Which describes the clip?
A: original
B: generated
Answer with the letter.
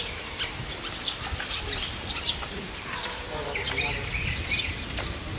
A